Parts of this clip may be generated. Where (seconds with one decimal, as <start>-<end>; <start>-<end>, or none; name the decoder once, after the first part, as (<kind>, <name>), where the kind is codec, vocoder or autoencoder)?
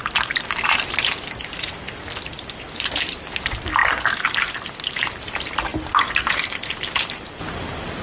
0.0-3.8 (vocoder, BigVGAN v2); 5.0-8.0